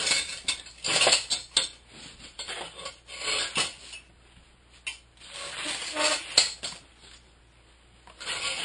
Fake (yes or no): no